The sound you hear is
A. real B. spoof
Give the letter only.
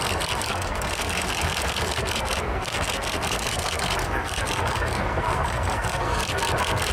B